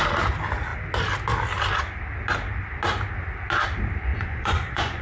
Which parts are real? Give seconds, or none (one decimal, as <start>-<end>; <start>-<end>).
0.0-4.1